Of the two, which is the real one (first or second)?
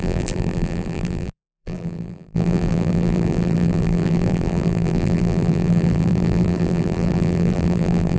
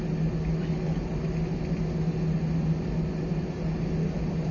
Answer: second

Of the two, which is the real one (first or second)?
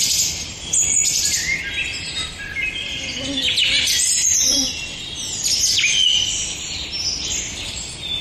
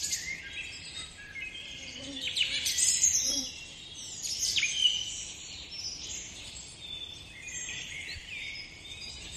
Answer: first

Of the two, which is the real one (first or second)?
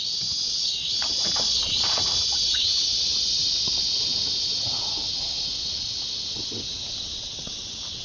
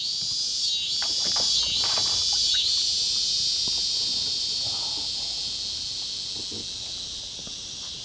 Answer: second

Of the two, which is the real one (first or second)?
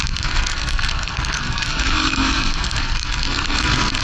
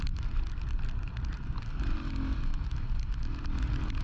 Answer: second